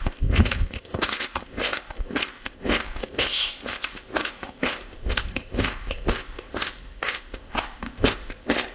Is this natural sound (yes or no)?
no